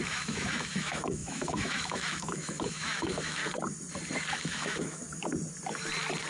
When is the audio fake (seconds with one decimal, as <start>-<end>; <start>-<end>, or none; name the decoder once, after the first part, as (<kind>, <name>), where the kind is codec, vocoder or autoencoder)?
0.0-3.4 (autoencoder, DAC-VAE); 4.3-5.0